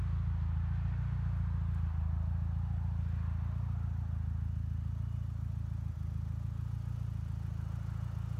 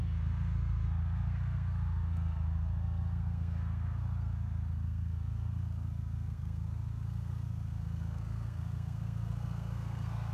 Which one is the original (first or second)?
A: first